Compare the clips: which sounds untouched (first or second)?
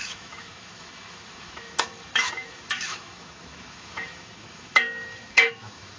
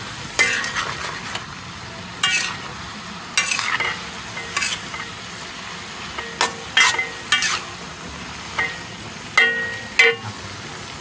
second